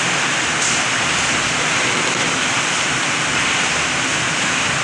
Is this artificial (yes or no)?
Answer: no